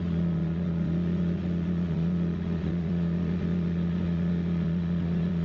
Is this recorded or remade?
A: remade